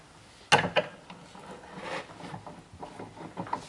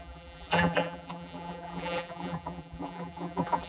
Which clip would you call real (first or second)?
first